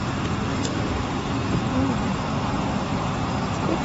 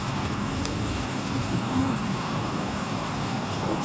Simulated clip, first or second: second